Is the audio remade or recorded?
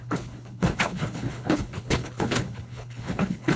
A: remade